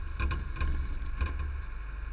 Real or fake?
real